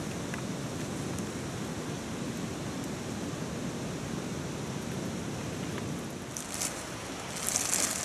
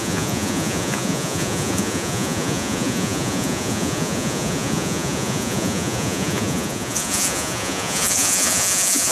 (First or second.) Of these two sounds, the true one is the first